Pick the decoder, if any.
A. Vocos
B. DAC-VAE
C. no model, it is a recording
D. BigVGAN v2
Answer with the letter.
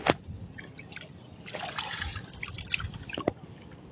C